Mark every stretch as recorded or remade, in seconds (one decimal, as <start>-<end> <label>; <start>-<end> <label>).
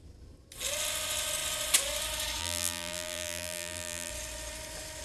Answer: 0.0-2.4 recorded; 2.4-4.1 remade; 4.1-5.0 recorded